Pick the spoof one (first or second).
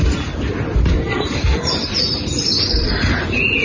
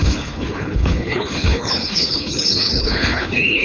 second